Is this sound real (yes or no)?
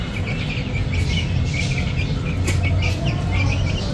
yes